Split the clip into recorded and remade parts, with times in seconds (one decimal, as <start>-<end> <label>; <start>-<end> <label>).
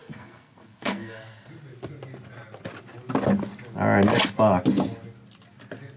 0.0-1.5 remade; 1.5-6.0 recorded